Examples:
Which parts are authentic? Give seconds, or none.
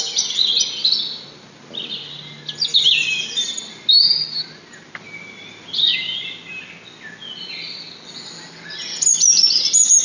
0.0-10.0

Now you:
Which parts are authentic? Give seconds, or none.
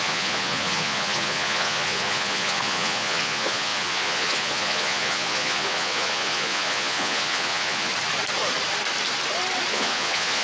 7.9-9.7